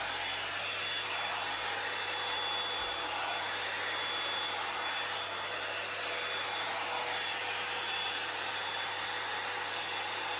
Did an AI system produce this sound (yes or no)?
no